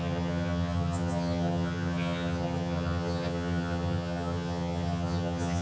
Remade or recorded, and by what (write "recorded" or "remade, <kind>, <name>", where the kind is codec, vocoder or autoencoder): remade, vocoder, HiFi-GAN